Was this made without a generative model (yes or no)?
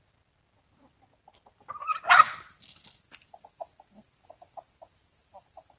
yes